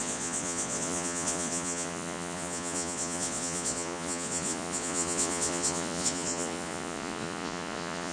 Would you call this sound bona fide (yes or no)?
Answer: no